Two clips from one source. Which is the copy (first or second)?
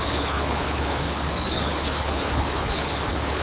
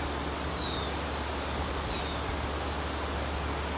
first